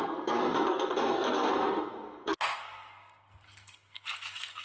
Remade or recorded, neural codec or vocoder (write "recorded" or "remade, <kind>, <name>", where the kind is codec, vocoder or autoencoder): remade, codec, SNAC